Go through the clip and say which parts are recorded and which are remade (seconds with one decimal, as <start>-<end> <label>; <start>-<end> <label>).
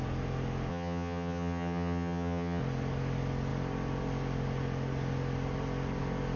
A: 0.0-0.7 recorded; 0.7-2.6 remade; 2.6-6.4 recorded